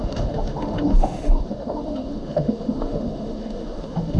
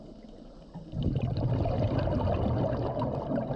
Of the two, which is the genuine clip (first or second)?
second